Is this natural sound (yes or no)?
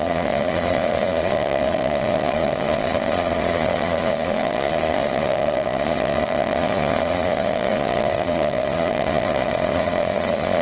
no